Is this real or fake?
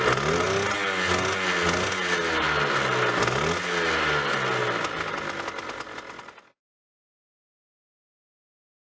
real